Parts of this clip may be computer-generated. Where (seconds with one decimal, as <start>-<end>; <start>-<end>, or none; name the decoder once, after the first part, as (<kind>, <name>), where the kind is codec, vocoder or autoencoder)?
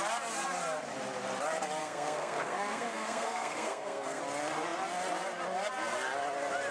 1.8-4.2 (codec, SNAC)